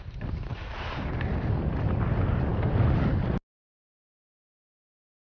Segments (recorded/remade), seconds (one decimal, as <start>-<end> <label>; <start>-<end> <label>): 0.0-5.3 recorded